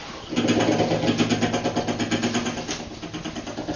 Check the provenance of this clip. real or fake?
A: real